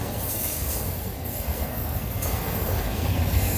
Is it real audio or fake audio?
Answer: fake